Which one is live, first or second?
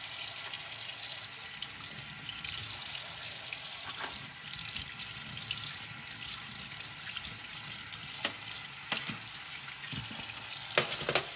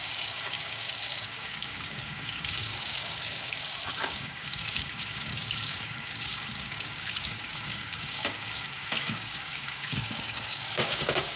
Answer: first